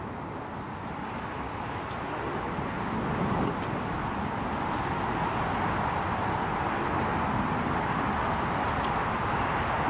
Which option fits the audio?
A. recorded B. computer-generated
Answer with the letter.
A